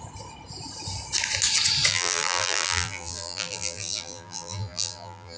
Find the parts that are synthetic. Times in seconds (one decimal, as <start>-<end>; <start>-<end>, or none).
1.9-5.4

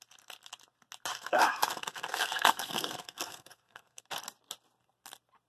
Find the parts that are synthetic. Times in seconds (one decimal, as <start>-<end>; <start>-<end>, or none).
1.1-4.0

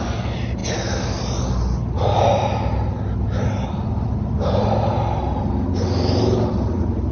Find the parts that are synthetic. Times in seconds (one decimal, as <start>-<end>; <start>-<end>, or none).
none

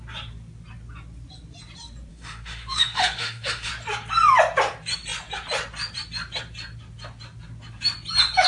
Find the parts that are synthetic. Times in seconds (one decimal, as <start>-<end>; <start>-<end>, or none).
2.1-3.7

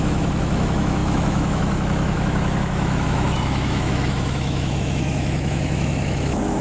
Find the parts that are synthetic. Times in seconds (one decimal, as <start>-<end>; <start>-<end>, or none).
0.0-6.6

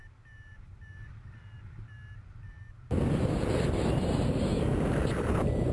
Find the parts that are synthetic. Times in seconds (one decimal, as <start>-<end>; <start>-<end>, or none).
3.4-4.5; 5.1-5.7

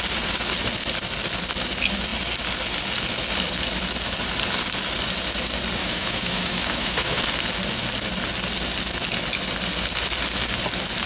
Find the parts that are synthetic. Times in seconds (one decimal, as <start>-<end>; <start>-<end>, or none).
5.8-7.2

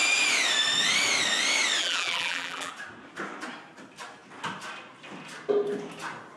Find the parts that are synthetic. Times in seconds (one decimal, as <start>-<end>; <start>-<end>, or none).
1.8-2.7